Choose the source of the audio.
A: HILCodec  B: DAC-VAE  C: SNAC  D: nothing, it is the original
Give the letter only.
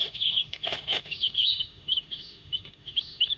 B